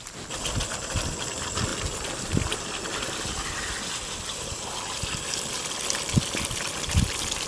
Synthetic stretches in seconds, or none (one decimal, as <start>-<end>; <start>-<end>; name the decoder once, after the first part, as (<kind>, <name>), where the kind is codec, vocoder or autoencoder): none